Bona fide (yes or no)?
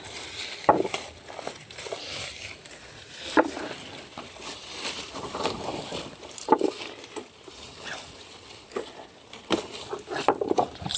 yes